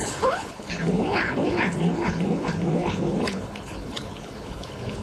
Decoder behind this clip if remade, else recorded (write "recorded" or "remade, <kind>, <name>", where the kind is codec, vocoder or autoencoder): remade, codec, HILCodec